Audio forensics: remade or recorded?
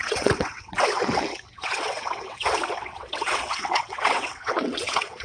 remade